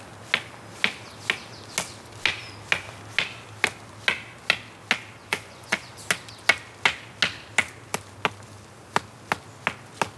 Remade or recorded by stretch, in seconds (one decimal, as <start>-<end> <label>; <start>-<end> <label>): 0.0-5.2 recorded; 5.2-5.9 remade; 5.9-10.2 recorded